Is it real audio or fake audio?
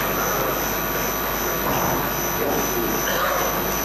real